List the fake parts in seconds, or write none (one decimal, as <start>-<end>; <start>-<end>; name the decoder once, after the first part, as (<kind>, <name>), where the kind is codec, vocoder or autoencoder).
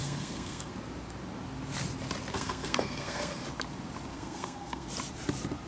0.0-0.7 (codec, SNAC); 2.3-3.4; 4.1-4.9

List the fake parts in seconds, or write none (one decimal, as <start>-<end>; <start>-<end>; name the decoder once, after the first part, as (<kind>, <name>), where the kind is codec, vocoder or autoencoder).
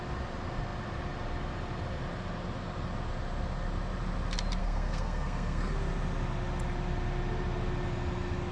4.6-5.7 (codec, SNAC)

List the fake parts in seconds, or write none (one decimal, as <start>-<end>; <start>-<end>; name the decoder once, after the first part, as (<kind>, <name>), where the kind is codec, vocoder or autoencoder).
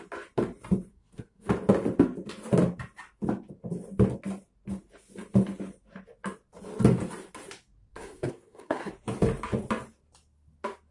0.9-1.5 (codec, SNAC); 7.9-8.9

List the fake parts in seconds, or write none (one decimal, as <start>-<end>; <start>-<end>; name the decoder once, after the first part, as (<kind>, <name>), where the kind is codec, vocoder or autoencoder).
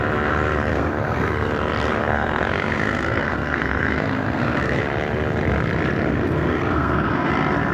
0.7-1.5 (codec, SNAC); 2.0-4.8; 6.2-7.3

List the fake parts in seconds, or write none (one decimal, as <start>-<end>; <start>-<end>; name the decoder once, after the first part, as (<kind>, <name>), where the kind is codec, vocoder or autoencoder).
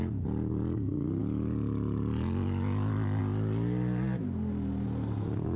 none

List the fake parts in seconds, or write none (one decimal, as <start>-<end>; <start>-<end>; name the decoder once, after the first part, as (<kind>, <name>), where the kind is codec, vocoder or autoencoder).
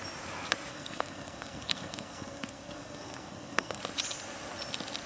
0.7-3.8 (codec, SNAC)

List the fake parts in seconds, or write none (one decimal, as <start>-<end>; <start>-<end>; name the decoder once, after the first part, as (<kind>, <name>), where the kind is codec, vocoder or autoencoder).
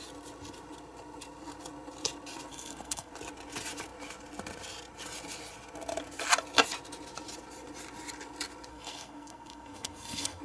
2.5-3.1 (codec, SNAC); 8.7-10.4